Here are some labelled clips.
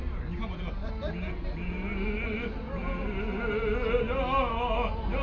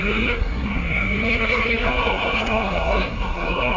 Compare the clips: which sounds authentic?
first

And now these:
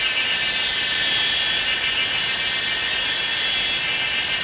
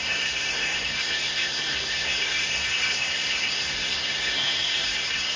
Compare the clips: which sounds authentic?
first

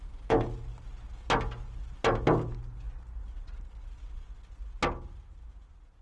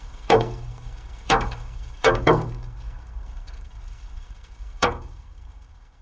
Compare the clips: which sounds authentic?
first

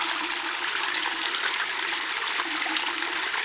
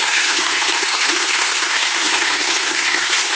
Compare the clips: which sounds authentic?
first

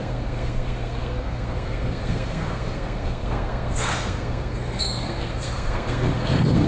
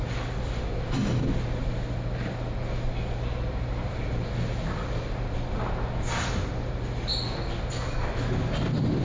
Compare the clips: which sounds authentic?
second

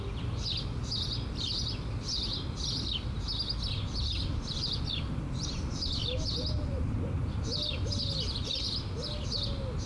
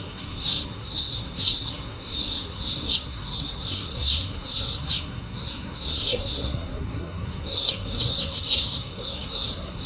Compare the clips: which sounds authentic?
first